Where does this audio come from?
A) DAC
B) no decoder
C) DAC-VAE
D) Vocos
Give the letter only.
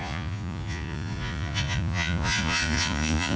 D